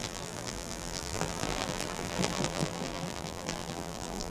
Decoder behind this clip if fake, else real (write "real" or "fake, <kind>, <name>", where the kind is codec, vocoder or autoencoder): fake, vocoder, BigVGAN v2